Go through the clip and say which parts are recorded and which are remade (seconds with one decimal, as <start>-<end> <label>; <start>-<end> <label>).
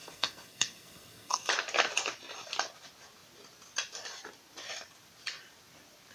0.0-1.5 remade; 1.5-6.1 recorded